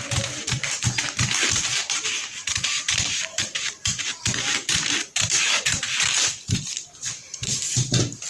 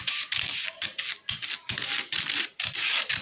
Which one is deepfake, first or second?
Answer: first